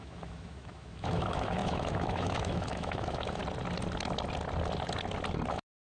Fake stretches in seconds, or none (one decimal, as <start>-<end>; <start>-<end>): 0.0-3.4; 5.5-5.9